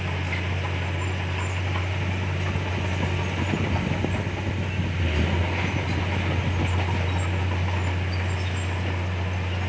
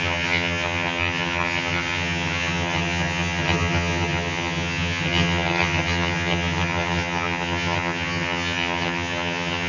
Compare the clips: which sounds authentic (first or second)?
first